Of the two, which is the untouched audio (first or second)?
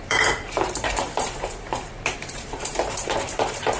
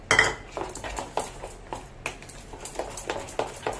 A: second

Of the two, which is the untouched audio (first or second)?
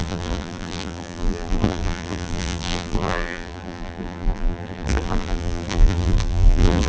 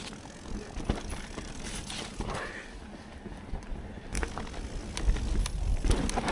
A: second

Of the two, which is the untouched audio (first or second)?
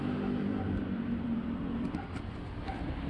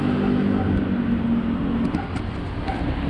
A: second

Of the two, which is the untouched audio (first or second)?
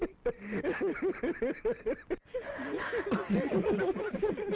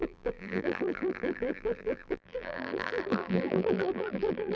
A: first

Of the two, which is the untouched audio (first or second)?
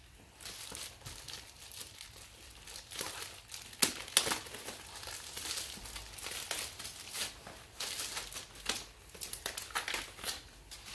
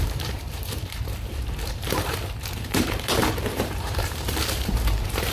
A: first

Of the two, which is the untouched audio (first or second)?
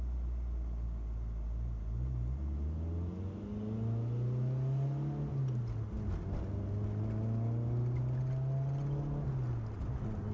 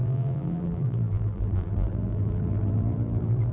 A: first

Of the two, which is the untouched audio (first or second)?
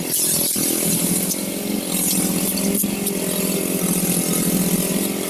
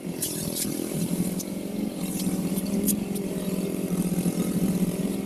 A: first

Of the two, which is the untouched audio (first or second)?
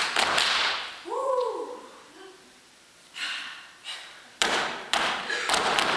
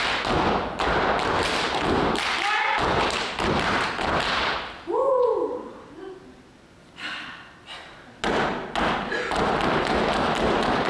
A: second